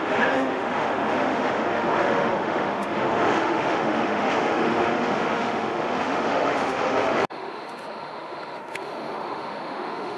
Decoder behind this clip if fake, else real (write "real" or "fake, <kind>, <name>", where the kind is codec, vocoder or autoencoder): fake, autoencoder, DAC-VAE